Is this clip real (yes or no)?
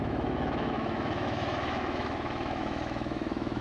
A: no